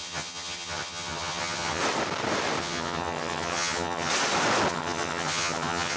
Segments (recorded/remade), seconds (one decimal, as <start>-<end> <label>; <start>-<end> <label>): 0.0-1.8 remade; 1.8-2.6 recorded; 2.6-4.1 remade; 4.1-4.7 recorded; 4.7-6.0 remade